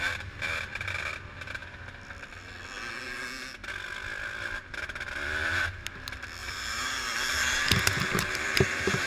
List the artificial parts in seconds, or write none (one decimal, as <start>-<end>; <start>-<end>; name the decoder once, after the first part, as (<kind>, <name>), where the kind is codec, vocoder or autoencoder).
6.4-9.1 (vocoder, BigVGAN v2)